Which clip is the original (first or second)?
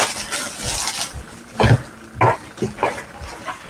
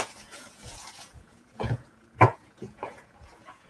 first